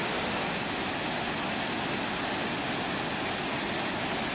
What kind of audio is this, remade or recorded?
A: recorded